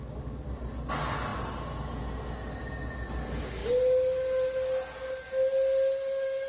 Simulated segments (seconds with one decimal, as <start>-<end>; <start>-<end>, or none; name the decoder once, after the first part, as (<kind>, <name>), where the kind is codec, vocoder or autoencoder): none